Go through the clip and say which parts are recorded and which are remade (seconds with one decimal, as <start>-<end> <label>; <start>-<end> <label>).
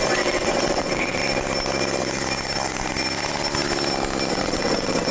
0.0-1.2 remade; 1.2-4.3 recorded; 4.3-5.1 remade